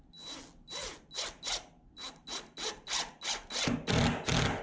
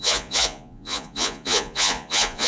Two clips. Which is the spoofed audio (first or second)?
second